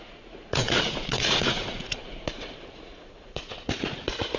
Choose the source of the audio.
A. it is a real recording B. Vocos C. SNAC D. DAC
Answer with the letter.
B